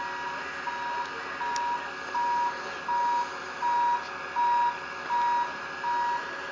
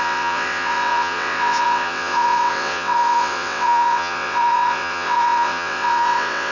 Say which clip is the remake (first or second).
second